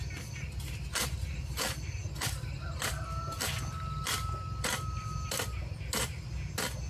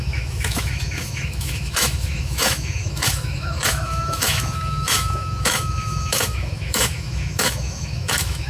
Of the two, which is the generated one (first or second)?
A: second